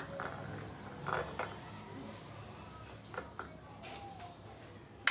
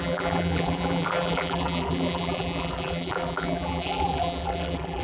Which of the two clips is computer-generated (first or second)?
second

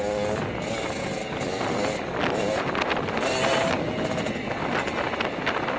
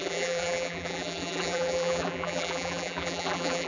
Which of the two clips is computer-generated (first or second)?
second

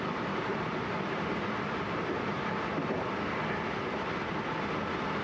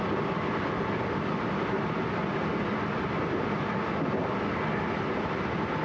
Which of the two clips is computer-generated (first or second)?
first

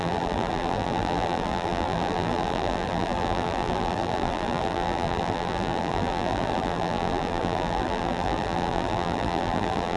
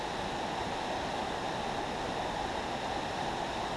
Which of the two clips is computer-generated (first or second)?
first